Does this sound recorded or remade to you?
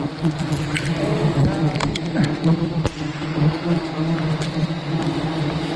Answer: recorded